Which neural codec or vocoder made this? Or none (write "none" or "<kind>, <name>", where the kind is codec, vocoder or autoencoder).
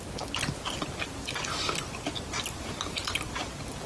none